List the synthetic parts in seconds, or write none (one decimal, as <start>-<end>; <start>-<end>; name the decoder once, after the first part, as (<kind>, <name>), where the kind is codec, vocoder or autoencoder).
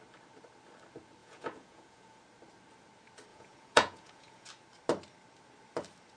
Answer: 1.2-2.2 (vocoder, Vocos); 3.3-4.5